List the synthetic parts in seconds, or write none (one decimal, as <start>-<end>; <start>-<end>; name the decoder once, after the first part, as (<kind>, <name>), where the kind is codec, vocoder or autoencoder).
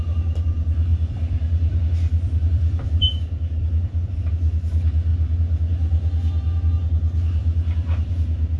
0.9-4.3 (vocoder, BigVGAN v2); 7.4-8.6